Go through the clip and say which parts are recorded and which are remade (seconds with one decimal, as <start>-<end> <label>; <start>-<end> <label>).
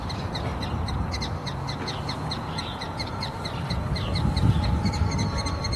0.0-1.4 recorded; 1.4-3.3 remade; 3.3-5.8 recorded